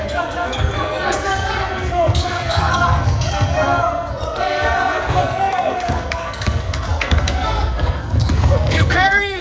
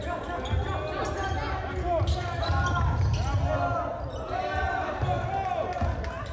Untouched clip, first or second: second